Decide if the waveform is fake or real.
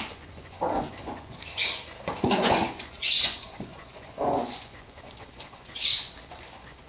fake